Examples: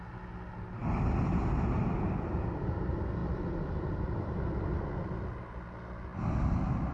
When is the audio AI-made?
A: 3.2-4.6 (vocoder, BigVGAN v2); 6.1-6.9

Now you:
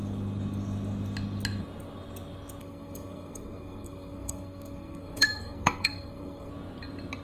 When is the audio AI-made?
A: 2.6-6.5 (codec, SNAC)